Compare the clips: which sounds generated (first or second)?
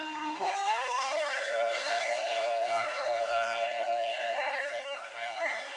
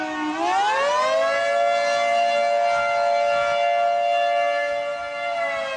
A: first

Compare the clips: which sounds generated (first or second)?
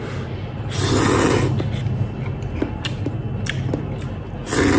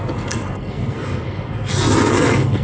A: second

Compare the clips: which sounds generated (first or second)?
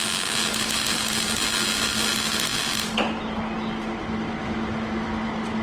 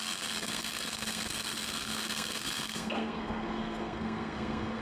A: second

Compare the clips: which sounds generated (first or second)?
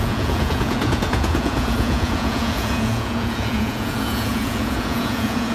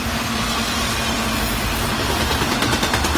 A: first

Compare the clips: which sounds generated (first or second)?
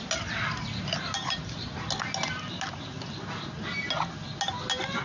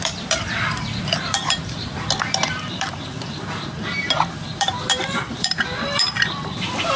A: second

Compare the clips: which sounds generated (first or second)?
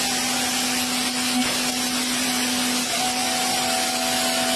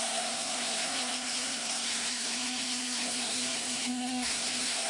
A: second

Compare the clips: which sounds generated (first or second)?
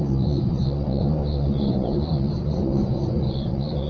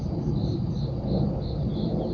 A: first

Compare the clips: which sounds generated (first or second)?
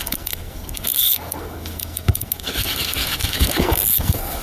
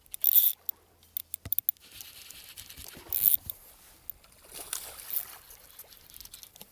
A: first